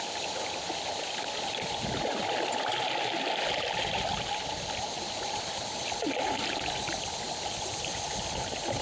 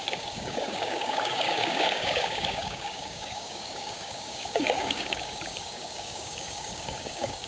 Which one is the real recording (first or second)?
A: first